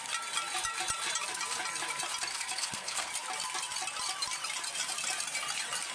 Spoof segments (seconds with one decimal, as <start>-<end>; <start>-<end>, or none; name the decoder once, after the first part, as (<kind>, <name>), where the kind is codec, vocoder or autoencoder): 2.3-3.1 (codec, SNAC)